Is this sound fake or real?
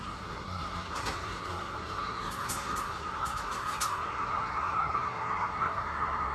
fake